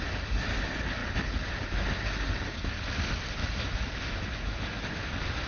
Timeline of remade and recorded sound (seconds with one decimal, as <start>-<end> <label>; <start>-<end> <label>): 0.0-3.4 recorded; 3.4-5.1 remade; 5.1-5.5 recorded